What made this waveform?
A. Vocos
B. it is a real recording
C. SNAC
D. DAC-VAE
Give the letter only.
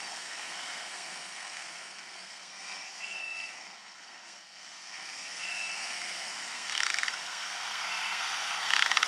C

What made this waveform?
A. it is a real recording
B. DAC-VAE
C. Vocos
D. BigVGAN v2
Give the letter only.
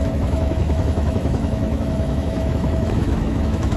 B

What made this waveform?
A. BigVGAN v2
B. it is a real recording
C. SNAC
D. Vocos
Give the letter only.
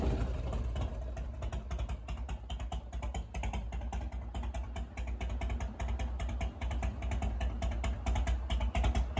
B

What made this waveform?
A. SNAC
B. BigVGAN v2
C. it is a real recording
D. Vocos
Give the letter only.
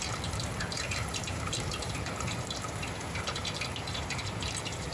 B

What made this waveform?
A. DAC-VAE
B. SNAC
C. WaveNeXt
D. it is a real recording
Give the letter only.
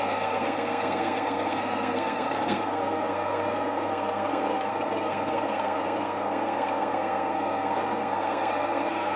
B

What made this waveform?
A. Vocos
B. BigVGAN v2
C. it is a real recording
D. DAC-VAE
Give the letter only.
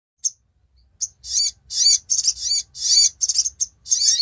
C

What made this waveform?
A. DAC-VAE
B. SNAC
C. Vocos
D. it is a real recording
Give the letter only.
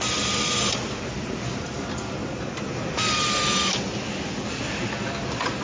D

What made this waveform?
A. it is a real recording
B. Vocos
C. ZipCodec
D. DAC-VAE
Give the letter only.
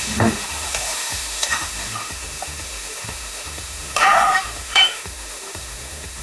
D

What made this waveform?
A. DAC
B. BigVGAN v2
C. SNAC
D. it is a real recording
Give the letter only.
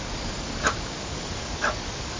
A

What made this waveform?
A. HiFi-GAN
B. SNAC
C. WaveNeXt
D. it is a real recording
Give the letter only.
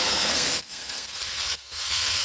B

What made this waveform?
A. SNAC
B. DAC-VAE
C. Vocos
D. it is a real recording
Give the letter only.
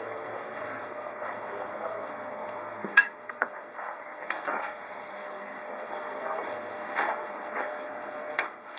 A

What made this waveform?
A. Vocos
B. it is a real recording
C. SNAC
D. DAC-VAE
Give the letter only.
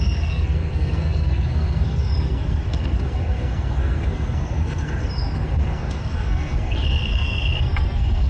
C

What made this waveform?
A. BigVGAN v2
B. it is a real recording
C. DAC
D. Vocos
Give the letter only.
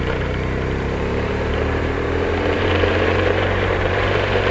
A